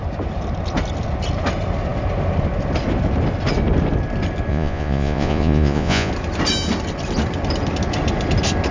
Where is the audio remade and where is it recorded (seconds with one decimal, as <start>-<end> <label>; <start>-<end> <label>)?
0.0-4.5 recorded; 4.5-6.1 remade; 6.1-8.7 recorded